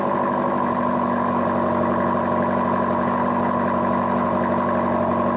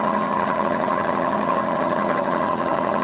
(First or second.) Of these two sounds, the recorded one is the first